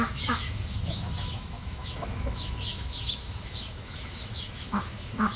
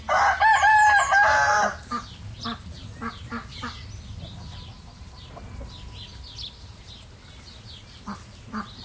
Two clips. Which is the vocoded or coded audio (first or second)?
first